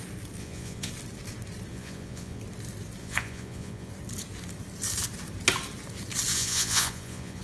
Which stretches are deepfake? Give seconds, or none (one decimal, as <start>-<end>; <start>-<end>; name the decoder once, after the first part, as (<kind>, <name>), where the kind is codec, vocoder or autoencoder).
0.4-0.9 (vocoder, Vocos); 1.7-2.4; 3.0-3.9; 6.3-7.4

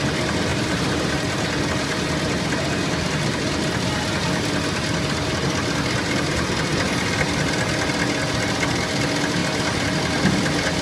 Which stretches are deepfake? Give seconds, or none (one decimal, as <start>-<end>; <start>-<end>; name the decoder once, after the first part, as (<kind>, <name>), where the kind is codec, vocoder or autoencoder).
0.5-1.6 (vocoder, BigVGAN v2)

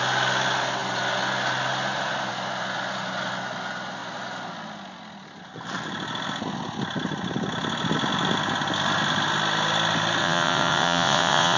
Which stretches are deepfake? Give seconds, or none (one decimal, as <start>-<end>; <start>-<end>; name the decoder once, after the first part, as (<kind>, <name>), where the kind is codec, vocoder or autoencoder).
10.2-11.6 (vocoder, WaveNeXt)

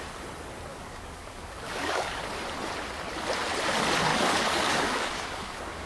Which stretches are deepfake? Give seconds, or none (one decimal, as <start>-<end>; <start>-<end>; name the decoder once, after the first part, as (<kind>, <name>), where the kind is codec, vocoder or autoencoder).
0.7-2.2 (codec, DAC); 4.1-5.9

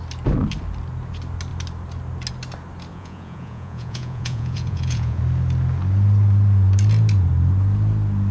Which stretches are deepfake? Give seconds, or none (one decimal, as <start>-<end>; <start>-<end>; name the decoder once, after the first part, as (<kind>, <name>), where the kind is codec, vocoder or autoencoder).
2.9-5.2 (vocoder, Vocos)

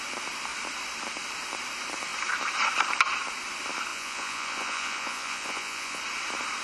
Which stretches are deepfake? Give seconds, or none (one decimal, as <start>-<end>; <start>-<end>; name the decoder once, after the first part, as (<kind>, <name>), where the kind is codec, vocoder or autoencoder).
3.9-6.0 (vocoder, Vocos)